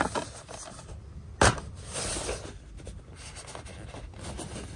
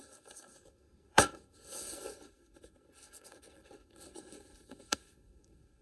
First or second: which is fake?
second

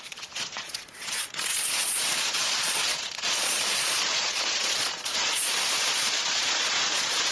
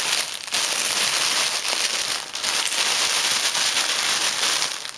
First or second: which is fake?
first